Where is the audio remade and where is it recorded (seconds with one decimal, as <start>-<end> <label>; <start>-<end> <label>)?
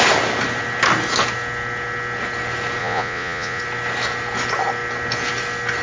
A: 0.0-2.8 recorded; 2.8-3.6 remade; 3.6-5.8 recorded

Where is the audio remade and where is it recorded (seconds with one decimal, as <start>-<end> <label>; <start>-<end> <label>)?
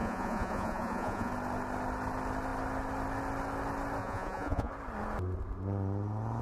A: 0.0-1.3 remade; 1.3-4.0 recorded; 4.0-4.7 remade; 4.7-6.4 recorded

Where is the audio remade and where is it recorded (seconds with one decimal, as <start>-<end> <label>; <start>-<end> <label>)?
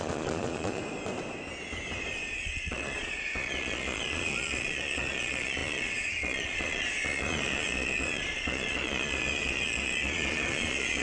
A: 0.0-0.8 remade; 0.8-2.3 recorded; 2.3-11.0 remade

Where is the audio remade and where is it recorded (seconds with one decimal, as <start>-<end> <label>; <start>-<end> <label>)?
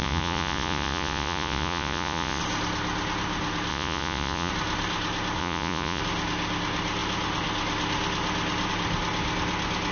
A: 0.0-2.4 remade; 2.4-3.7 recorded; 3.7-4.5 remade; 4.5-5.4 recorded; 5.4-6.0 remade; 6.0-9.9 recorded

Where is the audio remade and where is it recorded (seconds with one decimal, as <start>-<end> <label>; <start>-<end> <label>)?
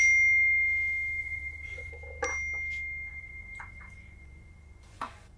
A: 0.0-1.2 recorded; 1.2-1.9 remade; 1.9-3.1 recorded; 3.1-5.4 remade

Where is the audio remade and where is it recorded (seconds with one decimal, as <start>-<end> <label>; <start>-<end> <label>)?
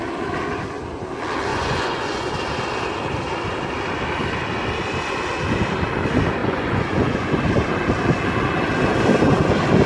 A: 0.0-1.5 recorded; 1.5-2.3 remade; 2.3-6.4 recorded; 6.4-7.4 remade; 7.4-9.9 recorded